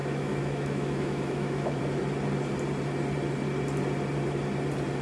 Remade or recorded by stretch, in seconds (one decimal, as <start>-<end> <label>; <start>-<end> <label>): 0.0-1.8 remade; 1.8-5.0 recorded